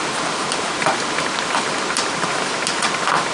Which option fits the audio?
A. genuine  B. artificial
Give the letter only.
A